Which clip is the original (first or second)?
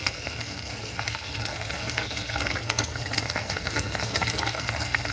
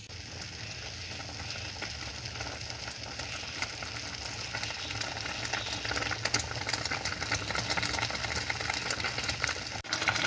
second